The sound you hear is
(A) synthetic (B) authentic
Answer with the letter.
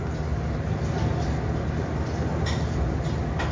B